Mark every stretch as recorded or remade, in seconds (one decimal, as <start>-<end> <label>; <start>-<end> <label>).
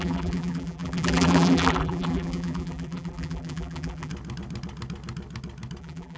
0.0-4.1 remade; 4.1-5.8 recorded; 5.8-6.2 remade